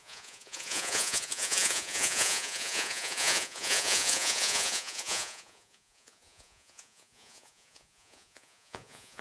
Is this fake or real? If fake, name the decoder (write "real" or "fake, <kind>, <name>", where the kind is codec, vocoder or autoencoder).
fake, vocoder, Vocos